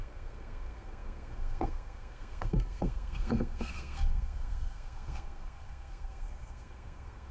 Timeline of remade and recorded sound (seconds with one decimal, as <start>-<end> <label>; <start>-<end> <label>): 0.0-7.3 remade